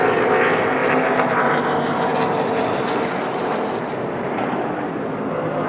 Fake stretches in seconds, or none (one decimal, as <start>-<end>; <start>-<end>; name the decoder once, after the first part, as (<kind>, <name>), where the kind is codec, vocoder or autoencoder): 0.8-1.6 (vocoder, BigVGAN v2); 2.1-4.6